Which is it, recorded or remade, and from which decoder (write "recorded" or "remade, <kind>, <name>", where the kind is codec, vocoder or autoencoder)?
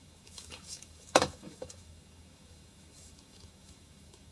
remade, autoencoder, DAC-VAE